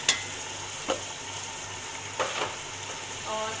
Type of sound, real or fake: real